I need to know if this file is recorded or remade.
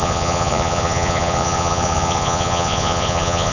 remade